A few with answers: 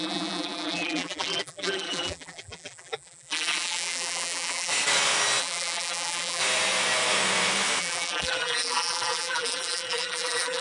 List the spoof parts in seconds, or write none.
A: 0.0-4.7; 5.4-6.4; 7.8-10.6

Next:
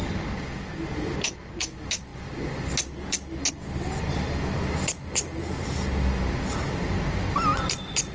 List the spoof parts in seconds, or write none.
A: none

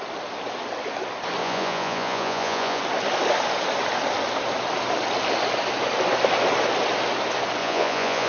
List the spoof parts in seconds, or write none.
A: 1.4-2.8; 7.6-8.3

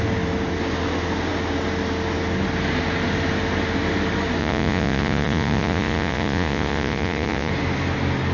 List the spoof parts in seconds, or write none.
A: 4.4-7.5

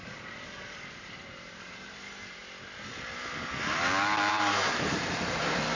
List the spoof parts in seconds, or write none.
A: 0.0-2.4; 4.3-5.7

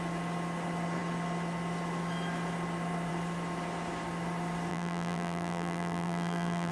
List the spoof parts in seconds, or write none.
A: 4.7-6.7

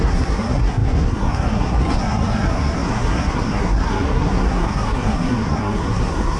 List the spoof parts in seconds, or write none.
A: 0.0-6.4

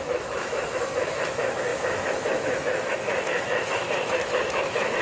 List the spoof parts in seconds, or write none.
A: 0.0-5.0